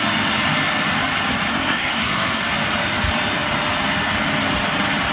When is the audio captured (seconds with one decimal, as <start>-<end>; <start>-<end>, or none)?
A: 0.0-1.5; 2.4-5.1